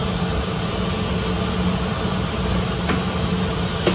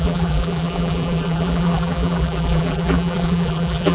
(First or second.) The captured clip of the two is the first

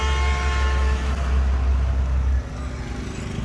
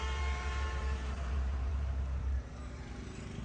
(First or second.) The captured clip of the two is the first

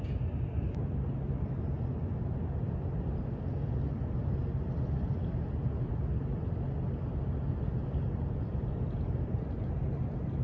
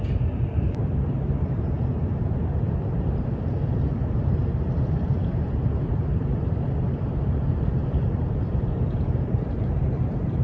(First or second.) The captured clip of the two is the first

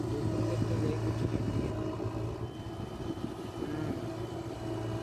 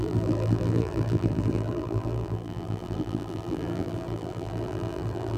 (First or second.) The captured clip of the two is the first